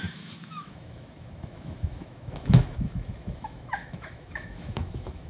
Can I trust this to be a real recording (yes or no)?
no